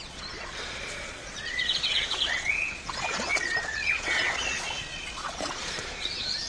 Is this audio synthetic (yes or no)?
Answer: yes